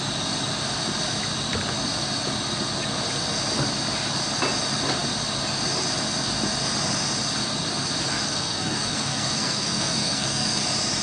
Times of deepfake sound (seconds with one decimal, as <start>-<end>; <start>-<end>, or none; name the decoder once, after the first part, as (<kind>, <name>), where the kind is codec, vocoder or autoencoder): 8.1-10.6 (codec, SNAC)